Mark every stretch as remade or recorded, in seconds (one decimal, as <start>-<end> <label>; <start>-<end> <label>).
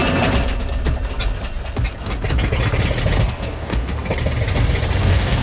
0.0-3.2 recorded; 3.2-3.9 remade; 3.9-5.0 recorded; 5.0-5.4 remade